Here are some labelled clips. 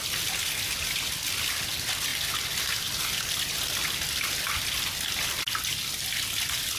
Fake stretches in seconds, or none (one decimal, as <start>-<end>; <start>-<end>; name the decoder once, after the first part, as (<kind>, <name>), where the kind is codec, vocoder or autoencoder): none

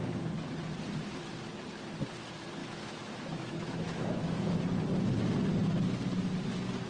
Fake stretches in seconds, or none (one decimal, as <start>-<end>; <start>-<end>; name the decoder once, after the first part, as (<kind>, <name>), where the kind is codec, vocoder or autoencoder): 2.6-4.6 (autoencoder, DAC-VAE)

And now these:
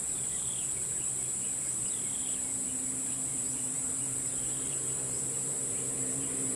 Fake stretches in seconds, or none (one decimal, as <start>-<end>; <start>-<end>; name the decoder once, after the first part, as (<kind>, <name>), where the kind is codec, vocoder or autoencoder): 3.3-6.6 (vocoder, BigVGAN v2)

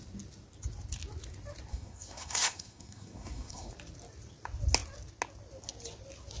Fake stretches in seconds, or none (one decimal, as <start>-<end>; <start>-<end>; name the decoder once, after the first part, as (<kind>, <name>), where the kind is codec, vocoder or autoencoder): 1.7-3.7 (codec, SNAC)

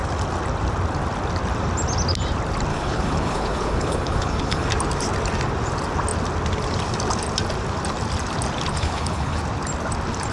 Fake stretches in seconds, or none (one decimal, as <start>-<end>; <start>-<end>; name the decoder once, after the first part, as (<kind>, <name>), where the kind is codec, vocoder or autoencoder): 2.7-4.7 (codec, HILCodec); 8.7-9.4

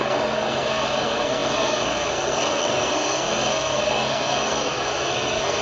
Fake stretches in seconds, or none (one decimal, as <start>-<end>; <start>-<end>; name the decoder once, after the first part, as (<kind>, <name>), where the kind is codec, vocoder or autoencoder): 0.0-5.6 (codec, SNAC)